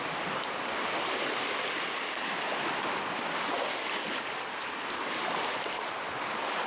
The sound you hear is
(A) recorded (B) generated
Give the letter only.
A